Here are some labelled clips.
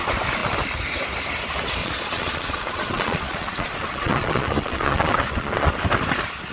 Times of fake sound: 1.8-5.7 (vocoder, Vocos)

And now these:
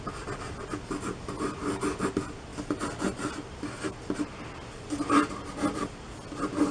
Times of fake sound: none